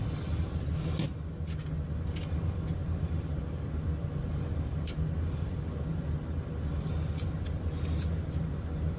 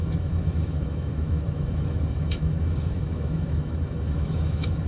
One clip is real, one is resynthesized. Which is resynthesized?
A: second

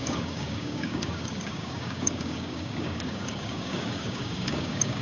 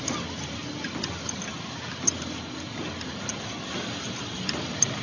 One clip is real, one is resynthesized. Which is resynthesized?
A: first